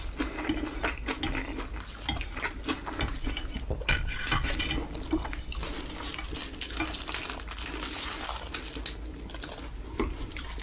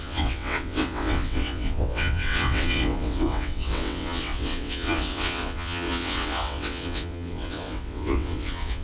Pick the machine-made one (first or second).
second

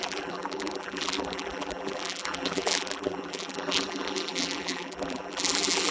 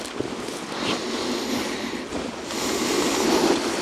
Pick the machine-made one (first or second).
first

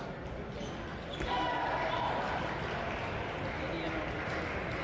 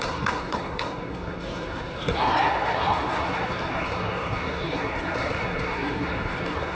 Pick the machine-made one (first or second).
second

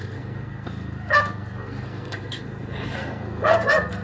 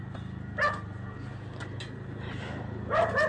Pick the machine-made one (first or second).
first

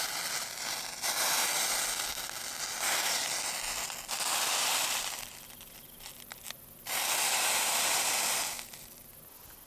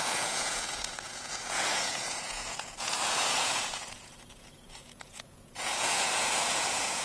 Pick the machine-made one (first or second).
second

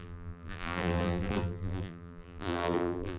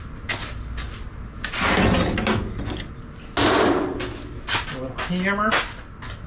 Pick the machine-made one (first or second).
first